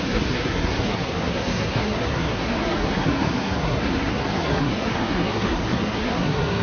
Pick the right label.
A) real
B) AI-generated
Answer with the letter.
B